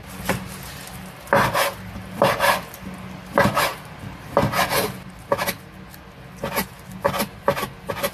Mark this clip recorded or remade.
recorded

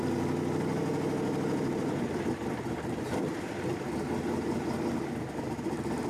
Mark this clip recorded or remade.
recorded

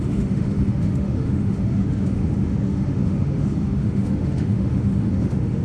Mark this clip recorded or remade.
remade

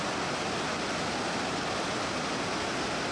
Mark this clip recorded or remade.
recorded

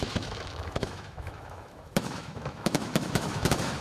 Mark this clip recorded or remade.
remade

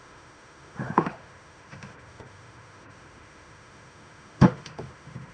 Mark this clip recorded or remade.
remade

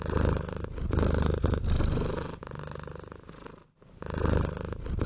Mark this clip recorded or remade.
recorded